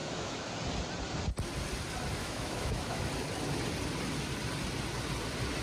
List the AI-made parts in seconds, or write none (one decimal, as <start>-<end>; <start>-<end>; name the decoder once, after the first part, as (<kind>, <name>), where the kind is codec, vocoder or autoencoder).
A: 0.0-0.5 (autoencoder, DAC-VAE); 2.2-3.1